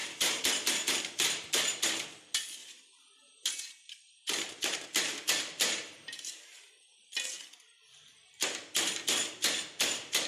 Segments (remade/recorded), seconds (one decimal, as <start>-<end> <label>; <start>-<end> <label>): 0.0-1.9 remade; 1.9-2.6 recorded; 2.6-6.7 remade; 6.7-9.2 recorded; 9.2-10.3 remade